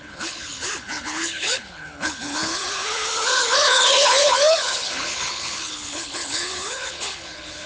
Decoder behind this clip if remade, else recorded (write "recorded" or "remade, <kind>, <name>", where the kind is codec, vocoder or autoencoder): remade, codec, HILCodec